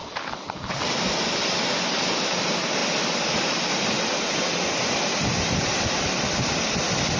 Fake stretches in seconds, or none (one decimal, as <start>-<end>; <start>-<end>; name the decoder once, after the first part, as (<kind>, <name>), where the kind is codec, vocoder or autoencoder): 2.4-7.2 (vocoder, BigVGAN v2)